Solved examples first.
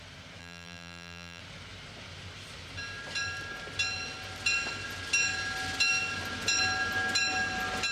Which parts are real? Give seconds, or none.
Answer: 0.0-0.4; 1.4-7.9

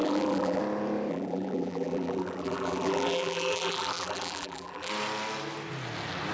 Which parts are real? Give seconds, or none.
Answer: 0.6-1.1; 4.9-6.3

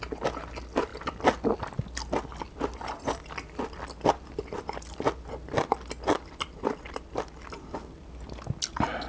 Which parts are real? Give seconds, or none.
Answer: 0.0-9.1

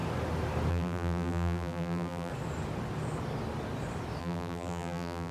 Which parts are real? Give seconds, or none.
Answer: 0.0-0.7; 2.3-4.2

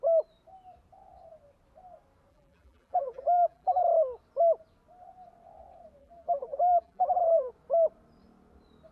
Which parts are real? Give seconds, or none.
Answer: 0.0-2.3; 3.8-6.0; 7.5-8.9

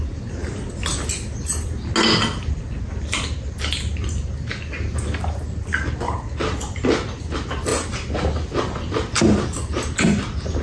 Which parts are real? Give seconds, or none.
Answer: 0.0-10.6

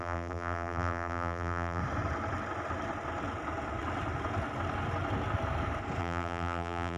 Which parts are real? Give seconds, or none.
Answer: 1.8-6.0